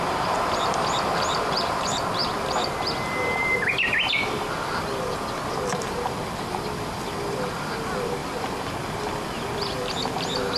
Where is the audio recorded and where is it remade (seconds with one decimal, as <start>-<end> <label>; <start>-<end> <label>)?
0.0-10.6 recorded